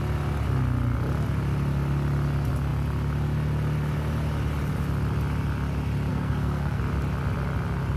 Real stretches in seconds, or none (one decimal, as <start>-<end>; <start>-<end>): 0.0-6.1; 6.8-8.0